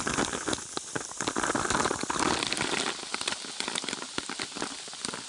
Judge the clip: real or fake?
real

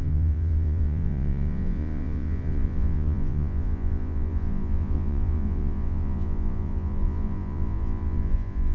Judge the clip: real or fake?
fake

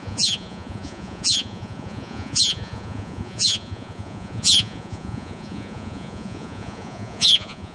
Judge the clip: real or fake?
fake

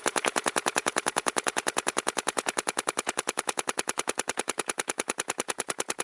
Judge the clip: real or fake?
fake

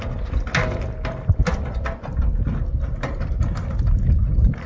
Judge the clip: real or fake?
real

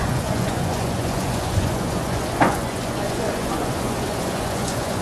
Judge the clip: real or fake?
fake